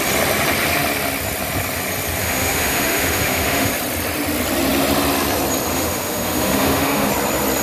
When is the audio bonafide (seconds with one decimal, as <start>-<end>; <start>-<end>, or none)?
0.0-2.2; 3.7-5.7; 7.1-7.6